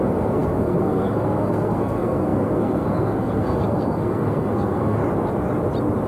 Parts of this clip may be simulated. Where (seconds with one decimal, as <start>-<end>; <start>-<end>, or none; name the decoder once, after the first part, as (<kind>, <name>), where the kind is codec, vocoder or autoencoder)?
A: 0.0-5.0 (codec, SNAC)